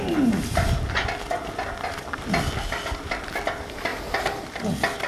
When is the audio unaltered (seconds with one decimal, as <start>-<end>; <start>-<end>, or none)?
0.0-5.1